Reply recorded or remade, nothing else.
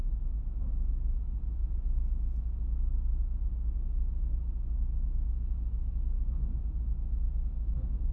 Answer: recorded